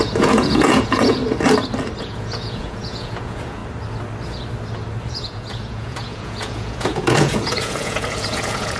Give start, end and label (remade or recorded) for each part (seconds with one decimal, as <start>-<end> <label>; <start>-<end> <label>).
0.0-1.2 remade; 1.2-2.0 recorded; 2.0-3.6 remade; 3.6-5.1 recorded; 5.1-8.8 remade